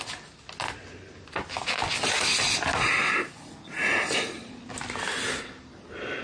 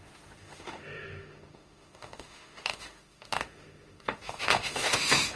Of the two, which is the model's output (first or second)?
second